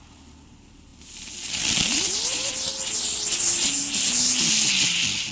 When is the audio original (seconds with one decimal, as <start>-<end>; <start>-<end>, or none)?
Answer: 0.0-5.3

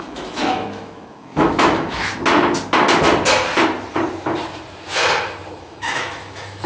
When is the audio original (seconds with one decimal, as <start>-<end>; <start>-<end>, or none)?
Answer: 2.1-5.6

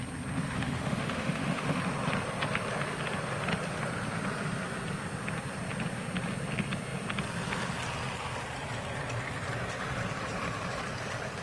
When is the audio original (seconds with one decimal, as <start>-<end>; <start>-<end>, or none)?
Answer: 0.0-0.6; 1.8-11.4

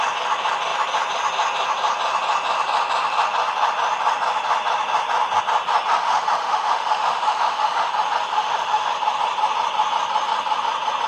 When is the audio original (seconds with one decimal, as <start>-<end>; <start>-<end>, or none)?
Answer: 0.0-5.9; 7.9-8.3; 8.9-11.1

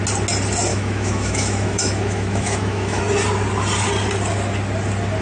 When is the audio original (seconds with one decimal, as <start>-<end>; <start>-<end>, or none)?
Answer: 0.0-0.7; 3.0-5.2

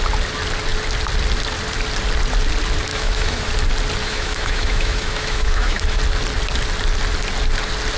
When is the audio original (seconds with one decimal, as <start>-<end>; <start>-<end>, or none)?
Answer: 0.0-2.9; 3.5-4.0; 6.0-8.0